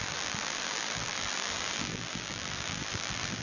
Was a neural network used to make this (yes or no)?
yes